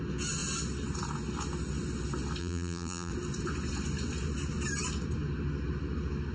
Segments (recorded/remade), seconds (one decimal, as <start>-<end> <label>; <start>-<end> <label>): 0.0-2.4 recorded; 2.4-3.1 remade; 3.1-6.3 recorded